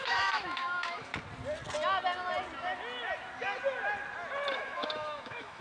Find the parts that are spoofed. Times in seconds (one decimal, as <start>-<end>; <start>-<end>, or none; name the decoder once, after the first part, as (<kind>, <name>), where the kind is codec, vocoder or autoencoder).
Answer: 0.0-1.1 (autoencoder, DAC-VAE); 4.5-5.6